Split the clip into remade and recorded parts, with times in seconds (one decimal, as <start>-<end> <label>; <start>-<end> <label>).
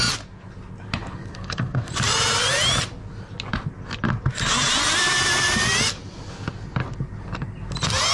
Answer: 0.0-1.3 recorded; 1.3-1.9 remade; 1.9-8.1 recorded